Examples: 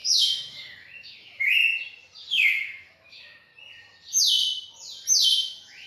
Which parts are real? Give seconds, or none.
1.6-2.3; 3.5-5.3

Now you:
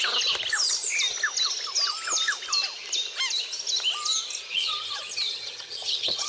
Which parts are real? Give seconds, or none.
0.0-4.5

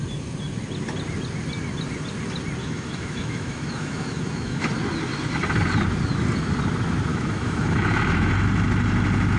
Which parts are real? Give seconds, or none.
0.0-2.6; 4.7-7.1; 8.3-9.4

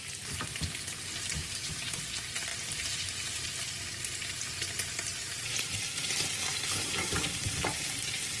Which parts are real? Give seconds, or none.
0.0-1.4; 2.0-8.4

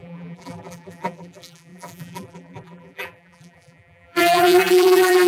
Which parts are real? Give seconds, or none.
none